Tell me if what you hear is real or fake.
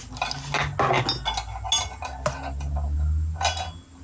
real